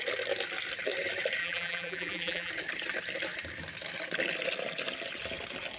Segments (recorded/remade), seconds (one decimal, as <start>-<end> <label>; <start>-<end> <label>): 0.0-1.4 recorded; 1.4-2.5 remade; 2.5-5.8 recorded